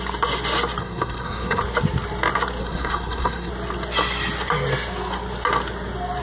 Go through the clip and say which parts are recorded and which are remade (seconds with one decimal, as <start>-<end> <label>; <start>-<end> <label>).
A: 0.0-0.8 recorded; 0.8-1.6 remade; 1.6-2.6 recorded; 2.6-3.5 remade; 3.5-6.2 recorded